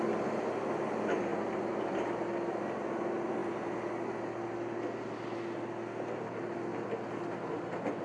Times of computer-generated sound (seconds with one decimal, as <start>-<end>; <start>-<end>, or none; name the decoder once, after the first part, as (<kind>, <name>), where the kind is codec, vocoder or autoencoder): none